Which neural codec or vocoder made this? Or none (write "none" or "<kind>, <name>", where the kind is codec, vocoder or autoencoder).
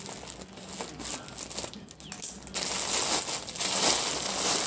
none